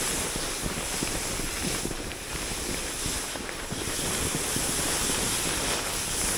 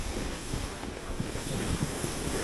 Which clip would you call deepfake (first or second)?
second